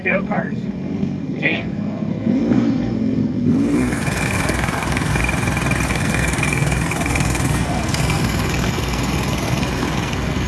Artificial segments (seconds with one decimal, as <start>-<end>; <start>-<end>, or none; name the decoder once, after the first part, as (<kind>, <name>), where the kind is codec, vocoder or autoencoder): 0.0-5.2 (codec, SNAC); 5.9-10.5